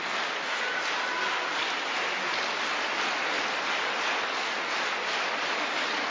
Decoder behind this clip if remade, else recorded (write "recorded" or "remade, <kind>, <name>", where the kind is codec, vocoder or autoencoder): recorded